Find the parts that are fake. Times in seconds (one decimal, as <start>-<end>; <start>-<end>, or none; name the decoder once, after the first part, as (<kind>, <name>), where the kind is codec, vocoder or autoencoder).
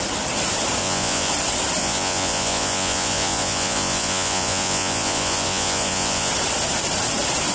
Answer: 0.8-1.3 (vocoder, Vocos); 1.8-6.3